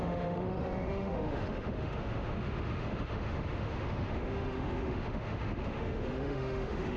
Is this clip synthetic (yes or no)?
yes